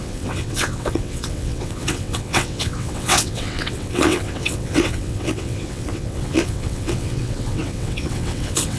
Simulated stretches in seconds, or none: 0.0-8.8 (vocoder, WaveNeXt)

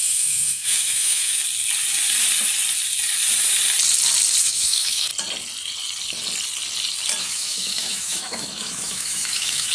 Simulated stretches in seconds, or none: 0.0-1.4 (autoencoder, DAC-VAE); 4.4-5.1; 7.2-9.7

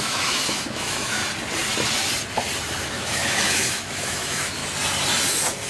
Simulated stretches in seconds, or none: 0.0-1.2 (autoencoder, DAC-VAE); 2.9-4.6

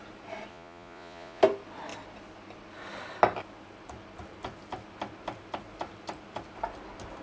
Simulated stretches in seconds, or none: 0.5-1.4 (vocoder, Vocos)

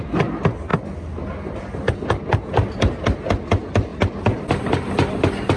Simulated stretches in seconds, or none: none